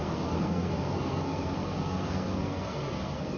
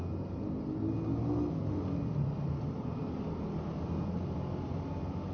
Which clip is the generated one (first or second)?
first